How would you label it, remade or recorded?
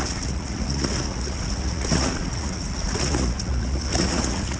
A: remade